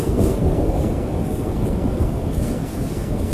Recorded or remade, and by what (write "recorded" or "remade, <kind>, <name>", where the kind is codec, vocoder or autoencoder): remade, codec, SNAC